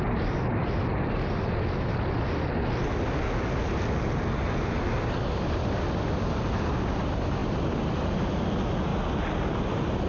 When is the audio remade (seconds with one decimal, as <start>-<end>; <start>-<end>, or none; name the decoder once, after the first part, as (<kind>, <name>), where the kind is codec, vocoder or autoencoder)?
none